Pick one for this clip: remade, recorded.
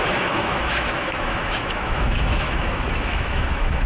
remade